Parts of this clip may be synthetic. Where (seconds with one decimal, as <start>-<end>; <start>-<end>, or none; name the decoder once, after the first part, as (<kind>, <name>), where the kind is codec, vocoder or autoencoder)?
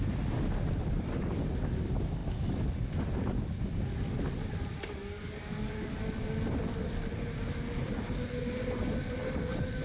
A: 5.0-5.9 (codec, DAC)